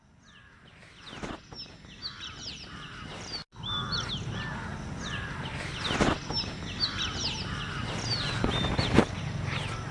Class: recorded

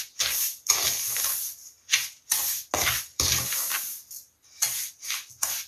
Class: recorded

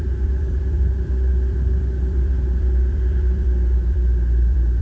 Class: remade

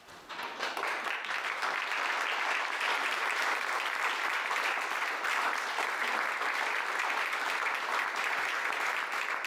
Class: recorded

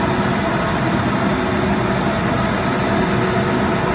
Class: recorded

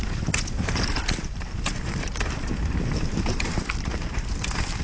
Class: remade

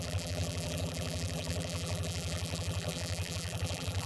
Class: remade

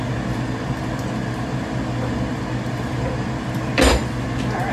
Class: recorded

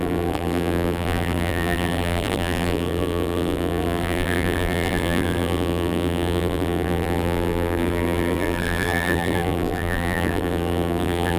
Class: remade